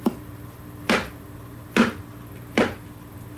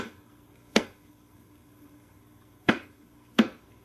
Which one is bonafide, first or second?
first